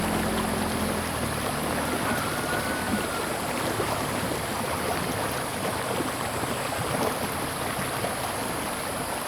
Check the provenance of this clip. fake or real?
real